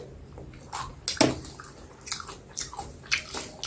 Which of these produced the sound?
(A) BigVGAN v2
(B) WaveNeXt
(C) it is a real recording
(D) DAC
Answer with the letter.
C